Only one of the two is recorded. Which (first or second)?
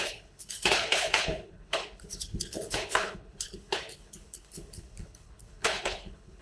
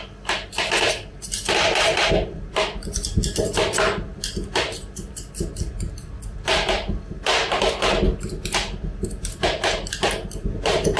second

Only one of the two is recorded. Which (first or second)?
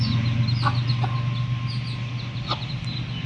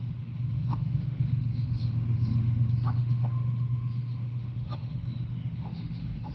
first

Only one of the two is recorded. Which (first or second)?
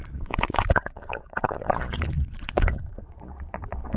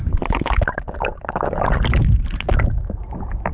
second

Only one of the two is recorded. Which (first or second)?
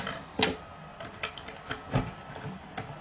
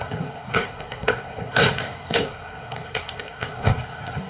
first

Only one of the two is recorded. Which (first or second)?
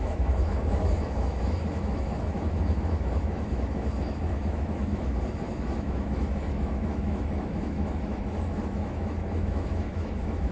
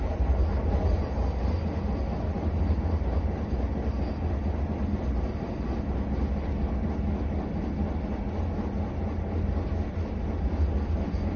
second